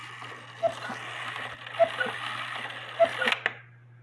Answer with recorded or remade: recorded